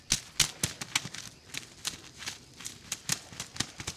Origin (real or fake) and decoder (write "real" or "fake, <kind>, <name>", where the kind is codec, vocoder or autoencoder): real